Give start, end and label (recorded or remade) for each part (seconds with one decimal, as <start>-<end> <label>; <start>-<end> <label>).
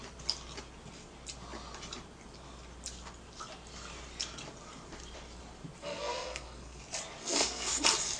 0.0-5.8 recorded; 5.8-6.8 remade; 6.8-7.2 recorded; 7.2-7.7 remade; 7.7-8.2 recorded